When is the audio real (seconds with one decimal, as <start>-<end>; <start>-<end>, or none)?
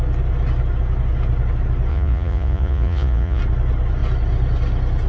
0.0-1.9; 3.4-5.1